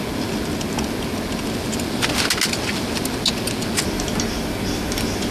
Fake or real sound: real